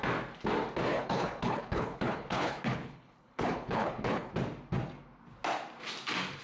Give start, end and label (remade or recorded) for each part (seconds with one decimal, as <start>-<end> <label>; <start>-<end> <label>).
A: 0.0-0.9 recorded; 0.9-4.3 remade; 4.3-6.4 recorded